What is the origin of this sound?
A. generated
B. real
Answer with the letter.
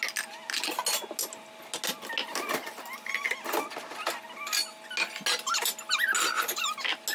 B